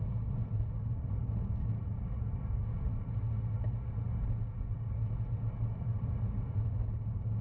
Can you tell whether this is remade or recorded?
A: recorded